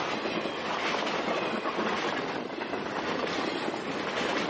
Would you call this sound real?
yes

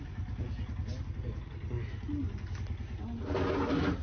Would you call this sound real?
yes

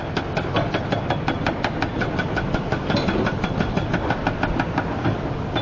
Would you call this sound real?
yes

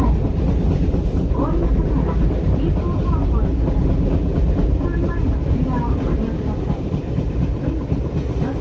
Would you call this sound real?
yes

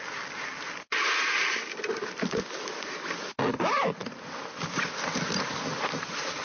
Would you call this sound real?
yes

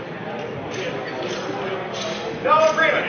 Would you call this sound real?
yes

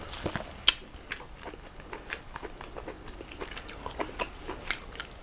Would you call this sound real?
yes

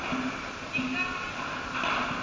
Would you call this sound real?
yes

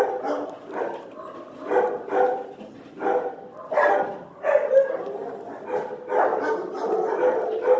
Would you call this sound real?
yes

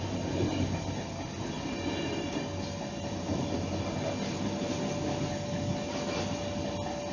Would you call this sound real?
yes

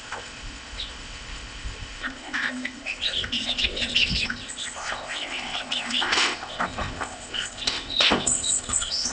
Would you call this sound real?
no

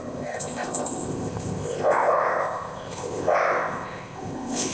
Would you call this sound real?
no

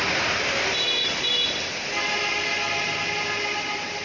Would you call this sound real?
yes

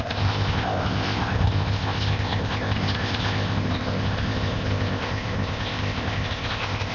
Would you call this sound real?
no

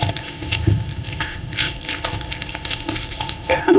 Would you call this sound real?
no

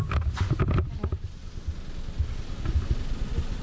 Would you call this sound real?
yes